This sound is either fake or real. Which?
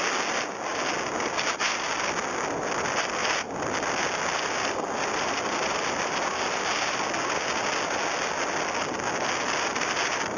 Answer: real